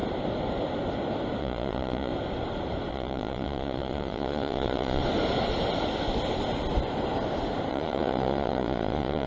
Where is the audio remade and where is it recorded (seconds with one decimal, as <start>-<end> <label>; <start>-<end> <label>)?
0.0-1.4 recorded; 1.4-2.1 remade; 2.1-2.9 recorded; 2.9-5.0 remade; 5.0-7.7 recorded; 7.7-9.3 remade